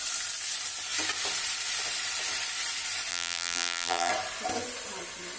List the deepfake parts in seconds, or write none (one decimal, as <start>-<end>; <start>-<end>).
3.1-4.1